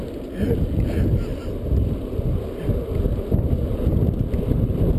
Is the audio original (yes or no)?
yes